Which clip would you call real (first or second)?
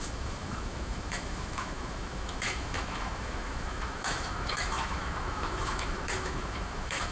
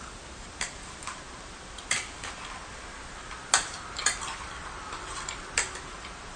second